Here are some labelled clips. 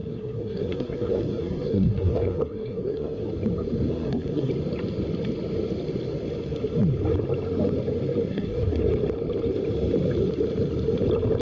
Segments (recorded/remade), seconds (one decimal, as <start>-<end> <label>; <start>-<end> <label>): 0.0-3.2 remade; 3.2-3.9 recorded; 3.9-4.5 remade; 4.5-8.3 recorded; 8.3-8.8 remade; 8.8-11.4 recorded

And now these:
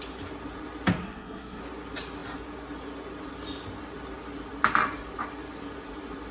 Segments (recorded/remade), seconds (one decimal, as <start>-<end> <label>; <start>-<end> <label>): 0.0-1.0 recorded; 1.0-1.6 remade; 1.6-6.3 recorded

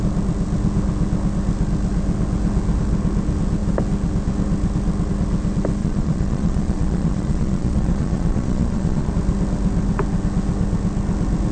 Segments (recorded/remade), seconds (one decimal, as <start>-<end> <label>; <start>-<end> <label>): 0.0-5.8 recorded; 5.8-9.1 remade; 9.1-11.5 recorded